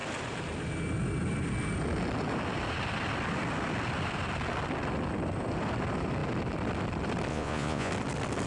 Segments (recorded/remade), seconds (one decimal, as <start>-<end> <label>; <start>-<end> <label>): 0.0-7.3 recorded; 7.3-7.9 remade; 7.9-8.5 recorded